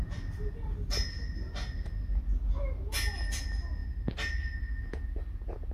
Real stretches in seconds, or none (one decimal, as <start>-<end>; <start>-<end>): 0.0-5.7